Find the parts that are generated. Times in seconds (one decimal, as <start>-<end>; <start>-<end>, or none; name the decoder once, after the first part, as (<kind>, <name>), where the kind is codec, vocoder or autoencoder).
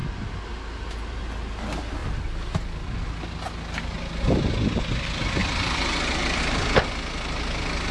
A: 5.4-6.4 (vocoder, BigVGAN v2)